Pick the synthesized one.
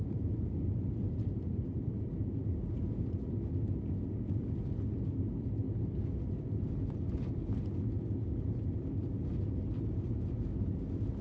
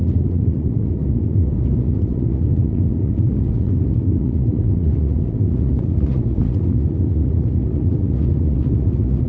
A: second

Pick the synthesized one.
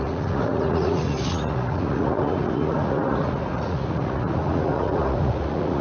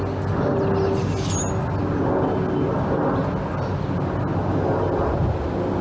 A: first